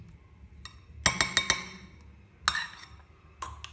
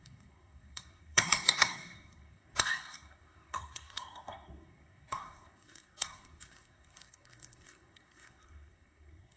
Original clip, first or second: first